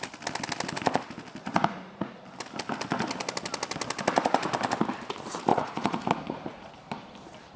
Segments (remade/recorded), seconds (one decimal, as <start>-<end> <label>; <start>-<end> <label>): 0.0-1.4 recorded; 1.4-2.2 remade; 2.2-5.5 recorded; 5.5-6.7 remade; 6.7-7.6 recorded